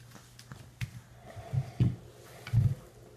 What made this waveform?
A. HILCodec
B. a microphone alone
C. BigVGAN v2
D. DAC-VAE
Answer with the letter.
B